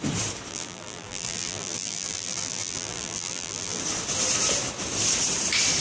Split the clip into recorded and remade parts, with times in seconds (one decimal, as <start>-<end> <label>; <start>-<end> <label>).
0.0-0.5 recorded; 0.5-3.8 remade; 3.8-5.8 recorded